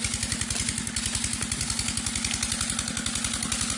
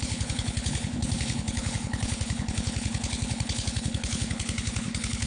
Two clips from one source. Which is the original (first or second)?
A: first